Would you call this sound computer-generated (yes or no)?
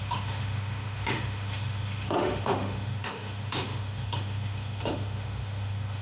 yes